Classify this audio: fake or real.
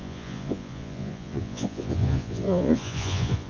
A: fake